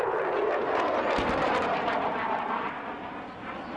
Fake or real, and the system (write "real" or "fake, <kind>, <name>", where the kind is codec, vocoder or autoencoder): real